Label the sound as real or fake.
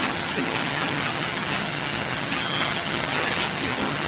fake